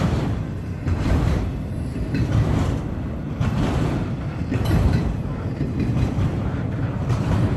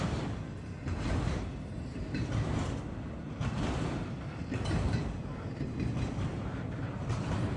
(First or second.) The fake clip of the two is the first